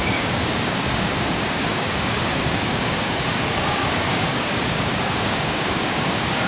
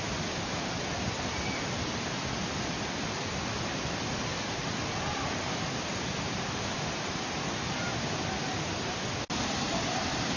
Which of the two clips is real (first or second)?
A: second